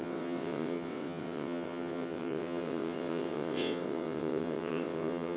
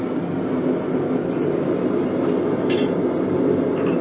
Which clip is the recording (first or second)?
second